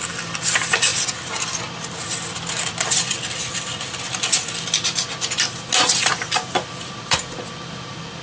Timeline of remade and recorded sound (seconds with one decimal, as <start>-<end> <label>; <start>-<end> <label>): 0.0-8.2 recorded